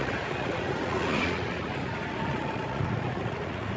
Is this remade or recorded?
remade